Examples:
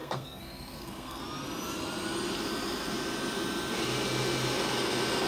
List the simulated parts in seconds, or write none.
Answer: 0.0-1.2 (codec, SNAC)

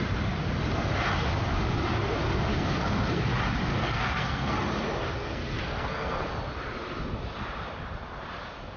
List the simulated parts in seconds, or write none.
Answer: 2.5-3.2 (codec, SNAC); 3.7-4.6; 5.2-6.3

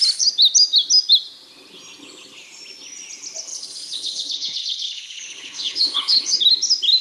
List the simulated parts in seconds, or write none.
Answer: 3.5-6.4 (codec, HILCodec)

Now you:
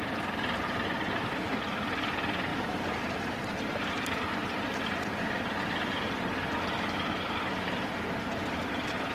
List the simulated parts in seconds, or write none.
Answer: 2.5-5.2 (vocoder, BigVGAN v2)

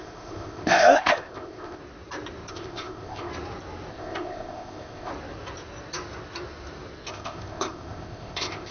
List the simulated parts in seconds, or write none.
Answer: 0.0-1.8 (codec, ZipCodec); 2.5-3.3; 3.9-5.1; 7.1-8.7

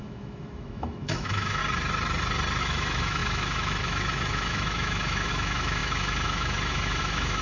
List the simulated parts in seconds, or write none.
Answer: 0.0-1.6 (autoencoder, DAC-VAE); 2.6-7.4

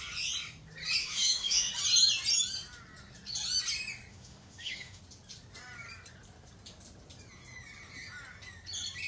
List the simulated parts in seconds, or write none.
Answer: 1.0-1.7 (autoencoder, DAC-VAE); 4.1-5.0

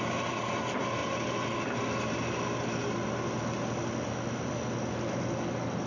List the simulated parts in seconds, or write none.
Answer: none